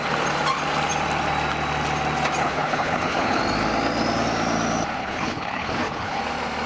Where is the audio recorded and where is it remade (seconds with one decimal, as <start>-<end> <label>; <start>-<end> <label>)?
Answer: 0.0-2.4 recorded; 2.4-3.4 remade; 3.4-5.0 recorded; 5.0-6.2 remade; 6.2-6.7 recorded